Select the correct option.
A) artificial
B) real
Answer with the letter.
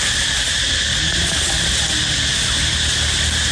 B